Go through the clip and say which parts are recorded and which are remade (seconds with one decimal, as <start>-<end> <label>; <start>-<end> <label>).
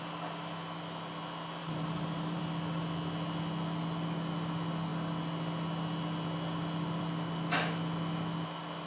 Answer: 0.0-1.6 recorded; 1.6-2.4 remade; 2.4-8.9 recorded